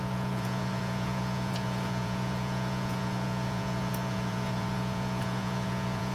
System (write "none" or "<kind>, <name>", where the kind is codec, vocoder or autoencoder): vocoder, Vocos